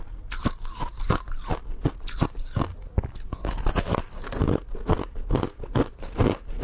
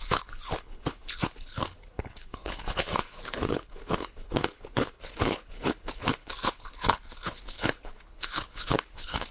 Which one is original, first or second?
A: first